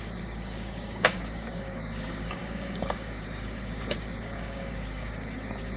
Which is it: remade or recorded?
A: remade